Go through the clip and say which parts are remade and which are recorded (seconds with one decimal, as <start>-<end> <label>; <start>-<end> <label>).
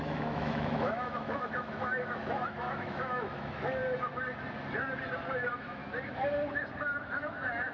0.0-3.8 remade; 3.8-5.3 recorded; 5.3-5.8 remade; 5.8-7.0 recorded; 7.0-7.7 remade